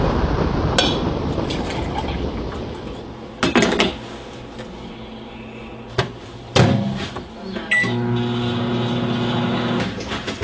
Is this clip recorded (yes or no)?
yes